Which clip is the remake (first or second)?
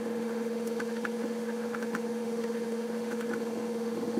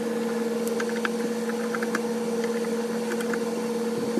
first